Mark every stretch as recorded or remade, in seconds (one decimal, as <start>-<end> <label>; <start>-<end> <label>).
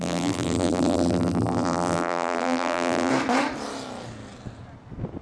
0.0-3.1 remade; 3.1-5.2 recorded